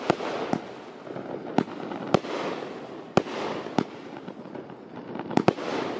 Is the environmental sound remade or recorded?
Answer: recorded